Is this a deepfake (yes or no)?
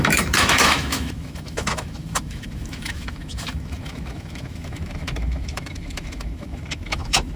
yes